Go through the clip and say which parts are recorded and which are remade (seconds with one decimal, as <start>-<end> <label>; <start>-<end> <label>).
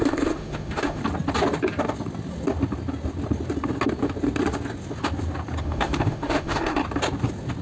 0.0-1.0 remade; 1.0-5.6 recorded; 5.6-6.8 remade; 6.8-7.6 recorded